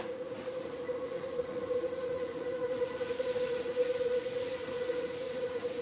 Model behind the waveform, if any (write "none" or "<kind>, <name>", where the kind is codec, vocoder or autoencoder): vocoder, Vocos